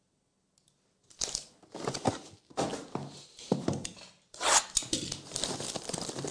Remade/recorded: recorded